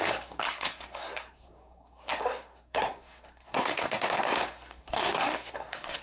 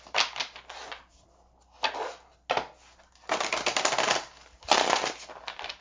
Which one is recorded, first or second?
second